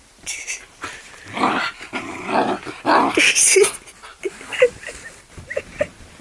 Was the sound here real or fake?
real